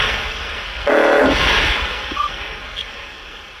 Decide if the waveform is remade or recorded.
remade